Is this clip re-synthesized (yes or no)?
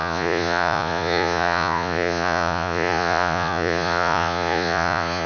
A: yes